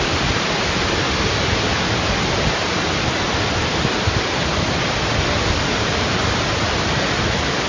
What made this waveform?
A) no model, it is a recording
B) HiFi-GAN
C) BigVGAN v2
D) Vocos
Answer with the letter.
A